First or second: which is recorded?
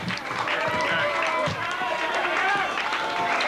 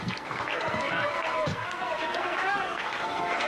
first